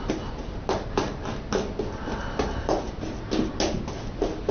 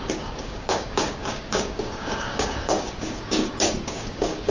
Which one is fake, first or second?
second